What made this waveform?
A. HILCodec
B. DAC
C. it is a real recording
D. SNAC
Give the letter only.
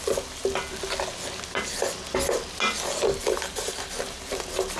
C